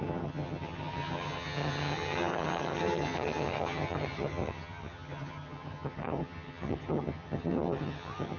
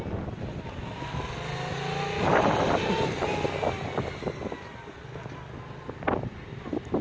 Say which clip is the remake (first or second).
first